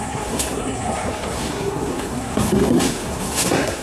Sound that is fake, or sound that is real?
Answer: fake